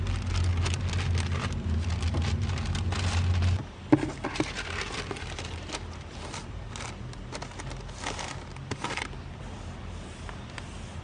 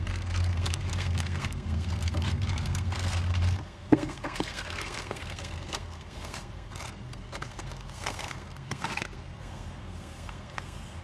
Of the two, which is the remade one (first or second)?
second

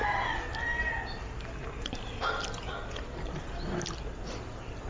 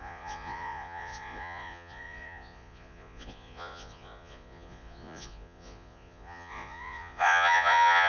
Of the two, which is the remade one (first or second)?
second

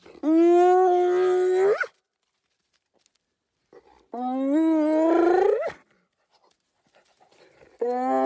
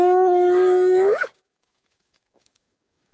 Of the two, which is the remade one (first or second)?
second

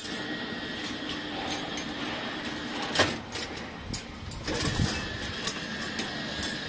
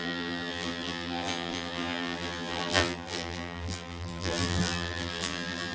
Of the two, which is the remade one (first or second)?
second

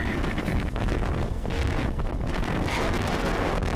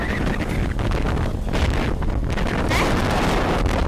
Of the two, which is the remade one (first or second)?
first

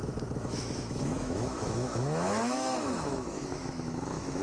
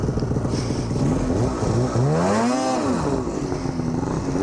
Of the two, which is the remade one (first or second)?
first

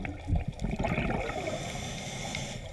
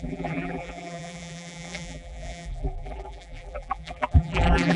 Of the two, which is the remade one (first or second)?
second